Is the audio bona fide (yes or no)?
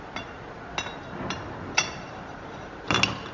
yes